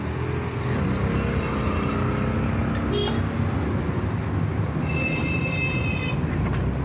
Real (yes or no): yes